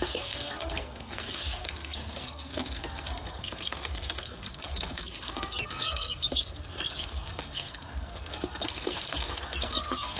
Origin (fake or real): fake